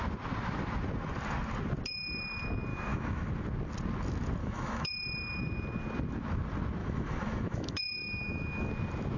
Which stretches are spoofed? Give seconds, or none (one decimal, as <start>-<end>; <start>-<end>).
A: 2.7-3.3; 4.4-4.9; 6.8-8.7